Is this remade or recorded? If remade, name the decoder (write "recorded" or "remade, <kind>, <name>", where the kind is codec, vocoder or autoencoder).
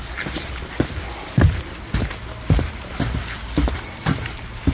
recorded